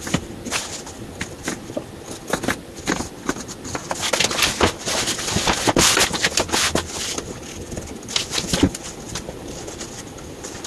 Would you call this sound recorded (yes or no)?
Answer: yes